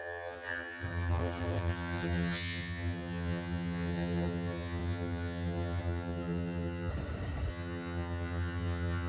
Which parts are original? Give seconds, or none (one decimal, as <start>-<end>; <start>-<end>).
6.9-7.5